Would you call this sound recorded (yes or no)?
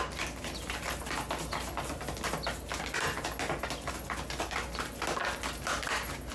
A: yes